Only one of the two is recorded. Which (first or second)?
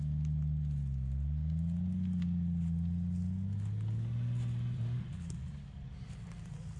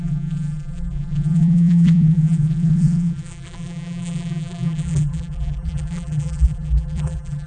first